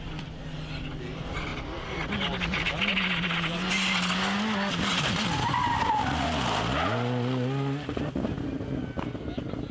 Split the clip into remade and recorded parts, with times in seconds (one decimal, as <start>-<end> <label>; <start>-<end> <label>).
0.0-9.7 recorded